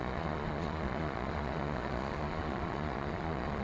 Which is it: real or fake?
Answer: fake